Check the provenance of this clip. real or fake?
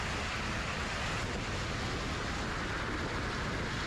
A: real